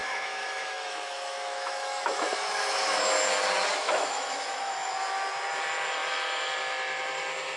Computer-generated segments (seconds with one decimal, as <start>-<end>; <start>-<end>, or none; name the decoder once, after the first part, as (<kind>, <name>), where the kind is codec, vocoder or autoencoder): 0.0-3.1 (autoencoder, DAC-VAE); 3.8-4.9